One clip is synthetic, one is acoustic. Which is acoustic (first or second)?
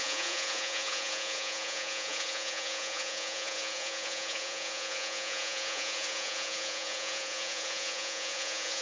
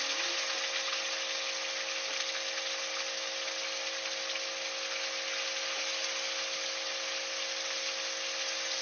second